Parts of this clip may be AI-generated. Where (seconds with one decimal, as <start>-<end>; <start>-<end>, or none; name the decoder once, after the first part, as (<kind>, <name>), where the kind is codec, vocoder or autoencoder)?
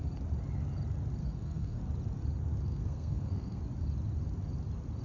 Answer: 1.2-1.8 (codec, SNAC); 2.7-3.6